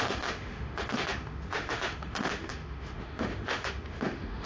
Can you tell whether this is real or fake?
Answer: fake